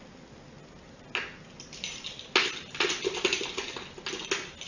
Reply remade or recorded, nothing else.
recorded